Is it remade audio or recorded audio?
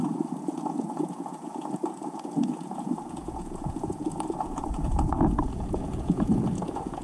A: remade